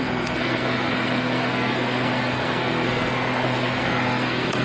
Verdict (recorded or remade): remade